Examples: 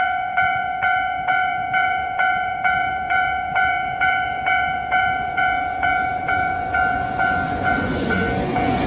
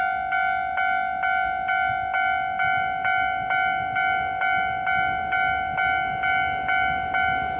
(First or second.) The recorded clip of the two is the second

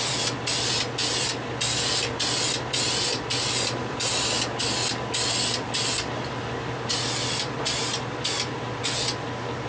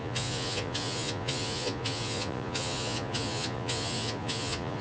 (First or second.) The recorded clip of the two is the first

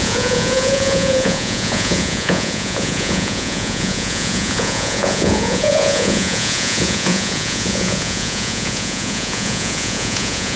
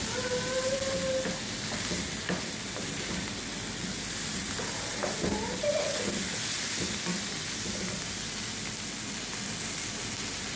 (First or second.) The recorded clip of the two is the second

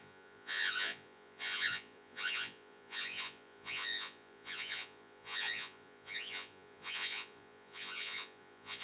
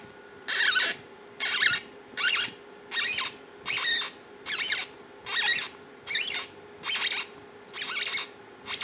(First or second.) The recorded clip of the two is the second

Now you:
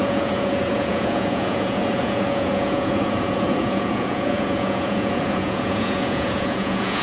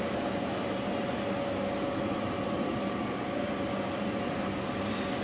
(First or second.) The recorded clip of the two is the second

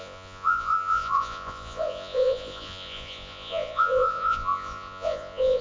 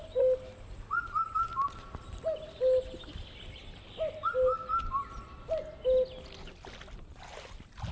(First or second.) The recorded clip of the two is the second